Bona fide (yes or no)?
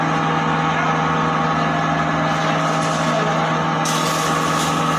yes